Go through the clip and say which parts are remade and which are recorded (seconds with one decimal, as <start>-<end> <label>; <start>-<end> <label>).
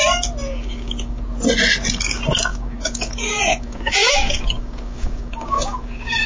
0.0-0.5 recorded; 0.5-1.2 remade; 1.2-2.5 recorded; 2.5-6.3 remade